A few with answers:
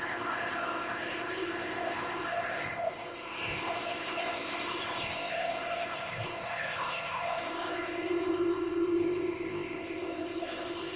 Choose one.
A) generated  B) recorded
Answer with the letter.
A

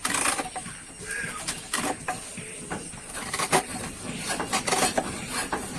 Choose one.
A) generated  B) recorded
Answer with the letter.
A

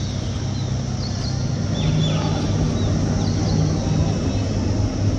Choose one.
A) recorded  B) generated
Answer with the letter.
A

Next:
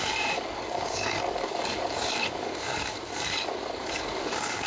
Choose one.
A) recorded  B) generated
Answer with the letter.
B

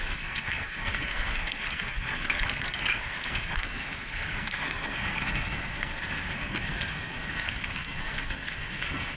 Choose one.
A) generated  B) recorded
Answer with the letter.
A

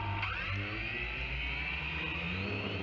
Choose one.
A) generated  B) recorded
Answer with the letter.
B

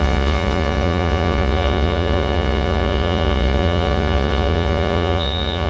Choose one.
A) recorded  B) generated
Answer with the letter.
B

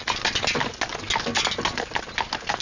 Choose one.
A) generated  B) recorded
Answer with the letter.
B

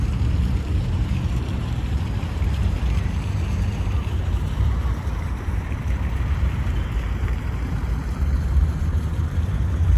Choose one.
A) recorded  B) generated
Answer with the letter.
B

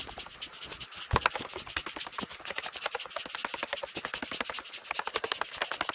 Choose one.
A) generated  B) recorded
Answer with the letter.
B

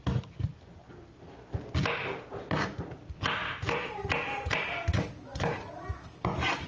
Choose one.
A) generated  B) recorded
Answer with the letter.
B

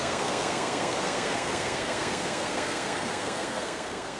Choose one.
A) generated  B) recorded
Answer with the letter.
A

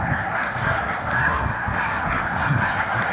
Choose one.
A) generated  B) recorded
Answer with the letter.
A